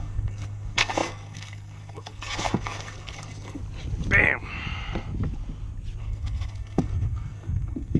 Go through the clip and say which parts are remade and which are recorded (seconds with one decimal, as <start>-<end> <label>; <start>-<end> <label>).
0.0-3.6 remade; 3.6-6.0 recorded; 6.0-8.0 remade